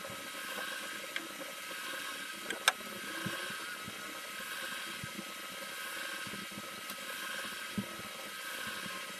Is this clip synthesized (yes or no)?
no